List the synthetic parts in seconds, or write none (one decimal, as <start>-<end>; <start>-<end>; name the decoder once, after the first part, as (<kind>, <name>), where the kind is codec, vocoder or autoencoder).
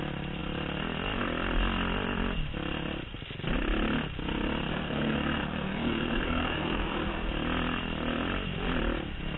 4.7-7.3 (codec, SNAC)